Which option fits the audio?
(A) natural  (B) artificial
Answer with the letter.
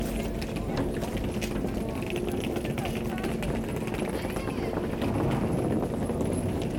A